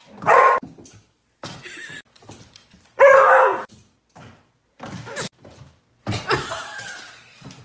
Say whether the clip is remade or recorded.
recorded